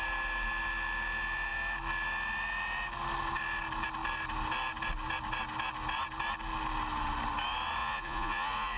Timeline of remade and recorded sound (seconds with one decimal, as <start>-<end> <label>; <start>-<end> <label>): 0.0-7.8 recorded; 7.8-8.8 remade